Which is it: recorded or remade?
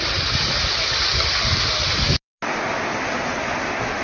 recorded